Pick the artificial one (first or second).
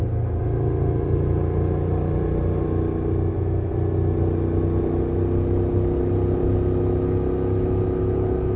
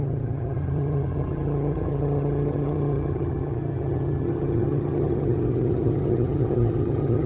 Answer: second